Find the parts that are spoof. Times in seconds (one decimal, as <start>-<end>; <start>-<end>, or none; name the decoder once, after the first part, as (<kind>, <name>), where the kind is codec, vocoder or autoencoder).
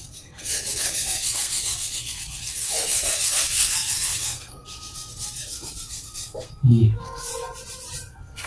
0.0-7.3 (codec, SNAC); 8.1-8.5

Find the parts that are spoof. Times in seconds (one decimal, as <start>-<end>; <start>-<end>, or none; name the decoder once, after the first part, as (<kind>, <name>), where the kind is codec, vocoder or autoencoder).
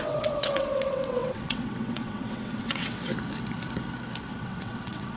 0.0-3.1 (vocoder, WaveNeXt); 4.3-5.2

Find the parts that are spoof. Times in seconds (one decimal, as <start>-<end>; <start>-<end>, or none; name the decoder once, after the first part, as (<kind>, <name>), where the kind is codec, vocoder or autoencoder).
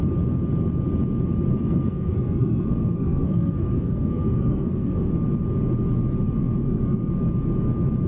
1.5-5.1 (codec, SNAC); 6.4-7.1